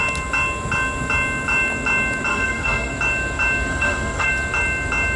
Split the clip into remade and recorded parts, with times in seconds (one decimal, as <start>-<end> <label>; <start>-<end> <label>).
0.0-2.3 recorded; 2.3-2.9 remade; 2.9-3.7 recorded; 3.7-4.3 remade; 4.3-5.2 recorded